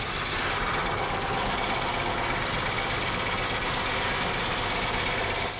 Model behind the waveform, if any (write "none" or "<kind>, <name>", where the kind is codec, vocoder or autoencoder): none